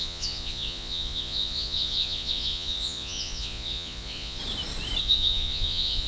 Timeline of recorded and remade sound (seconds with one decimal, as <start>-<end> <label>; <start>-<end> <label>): 0.0-4.4 remade; 4.4-5.0 recorded; 5.0-6.1 remade